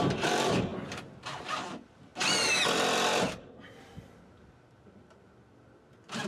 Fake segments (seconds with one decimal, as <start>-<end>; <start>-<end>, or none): 0.0-2.1